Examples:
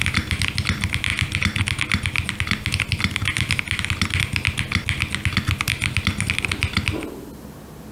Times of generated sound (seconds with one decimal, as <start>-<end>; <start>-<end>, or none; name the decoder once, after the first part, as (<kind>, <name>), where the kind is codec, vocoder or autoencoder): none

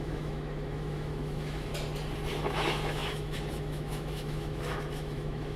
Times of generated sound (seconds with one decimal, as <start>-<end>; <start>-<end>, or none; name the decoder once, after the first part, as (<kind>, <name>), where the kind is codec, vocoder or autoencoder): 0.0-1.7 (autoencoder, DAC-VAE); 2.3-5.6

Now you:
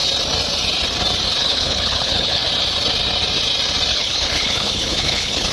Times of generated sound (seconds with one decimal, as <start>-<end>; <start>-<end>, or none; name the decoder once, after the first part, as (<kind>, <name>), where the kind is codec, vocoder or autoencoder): 1.4-2.4 (codec, HILCodec); 3.9-5.5

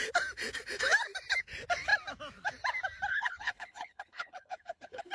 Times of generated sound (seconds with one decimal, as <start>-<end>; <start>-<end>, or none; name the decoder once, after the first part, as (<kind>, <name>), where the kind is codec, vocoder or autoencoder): 3.1-5.1 (codec, HILCodec)

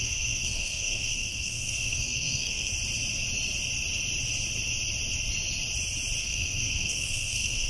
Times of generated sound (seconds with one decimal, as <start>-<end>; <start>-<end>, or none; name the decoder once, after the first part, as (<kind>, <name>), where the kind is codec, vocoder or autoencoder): 0.0-2.7 (codec, SNAC); 6.2-7.7

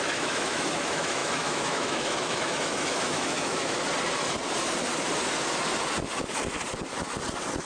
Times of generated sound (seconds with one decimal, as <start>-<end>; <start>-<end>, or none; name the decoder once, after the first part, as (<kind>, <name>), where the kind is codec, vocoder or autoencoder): 0.0-3.8 (autoencoder, DAC-VAE)

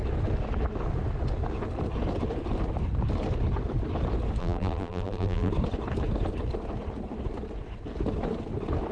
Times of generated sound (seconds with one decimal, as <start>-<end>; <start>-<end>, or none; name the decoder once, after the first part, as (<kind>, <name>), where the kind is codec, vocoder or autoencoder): 4.4-5.5 (vocoder, BigVGAN v2)

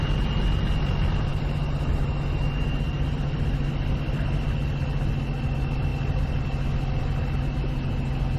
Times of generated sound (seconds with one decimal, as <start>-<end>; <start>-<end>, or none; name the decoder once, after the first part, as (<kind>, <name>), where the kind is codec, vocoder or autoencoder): none